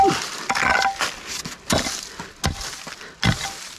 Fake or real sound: real